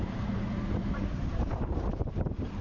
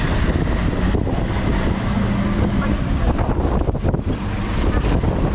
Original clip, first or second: second